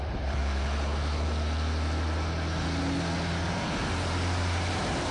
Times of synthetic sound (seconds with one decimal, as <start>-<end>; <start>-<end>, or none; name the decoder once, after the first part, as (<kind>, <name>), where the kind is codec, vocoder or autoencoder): 0.0-0.4 (vocoder, BigVGAN v2); 3.5-5.1